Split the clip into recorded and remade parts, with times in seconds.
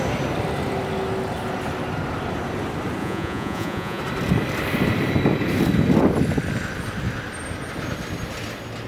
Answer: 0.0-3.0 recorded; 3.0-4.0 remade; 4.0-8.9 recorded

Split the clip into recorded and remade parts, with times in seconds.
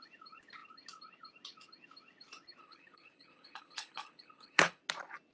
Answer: 0.0-2.6 recorded; 2.6-4.8 remade; 4.8-5.3 recorded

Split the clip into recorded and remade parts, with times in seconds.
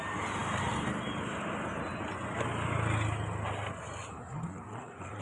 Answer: 0.0-4.1 recorded; 4.1-5.2 remade